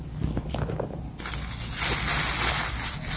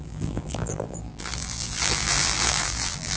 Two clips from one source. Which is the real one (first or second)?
first